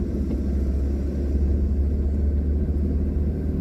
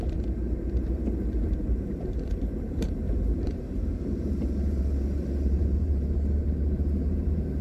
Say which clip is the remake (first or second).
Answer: second